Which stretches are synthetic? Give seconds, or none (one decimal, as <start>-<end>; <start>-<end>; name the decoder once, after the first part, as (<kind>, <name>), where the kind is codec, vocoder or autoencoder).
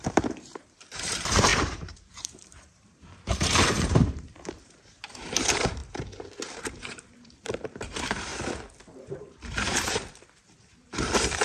0.0-8.3 (vocoder, BigVGAN v2); 8.9-11.4